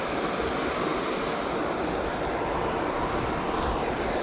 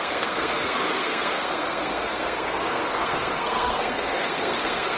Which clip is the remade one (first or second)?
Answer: second